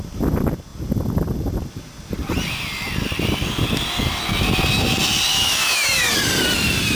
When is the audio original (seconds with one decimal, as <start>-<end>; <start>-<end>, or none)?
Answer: 0.0-5.3; 6.1-6.9